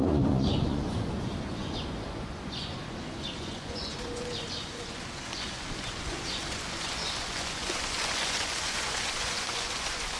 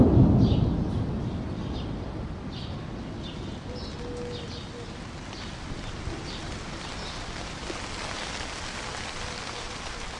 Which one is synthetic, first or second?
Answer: first